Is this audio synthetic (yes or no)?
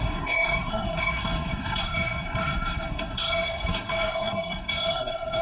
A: yes